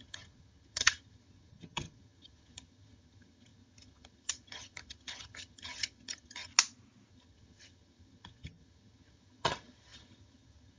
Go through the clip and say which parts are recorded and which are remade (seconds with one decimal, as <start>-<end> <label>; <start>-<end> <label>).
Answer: 0.0-6.5 remade; 6.5-7.1 recorded; 7.1-10.8 remade